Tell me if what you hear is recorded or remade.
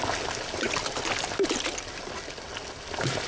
recorded